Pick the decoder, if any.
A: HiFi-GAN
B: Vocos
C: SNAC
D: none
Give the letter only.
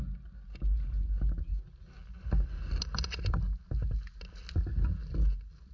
D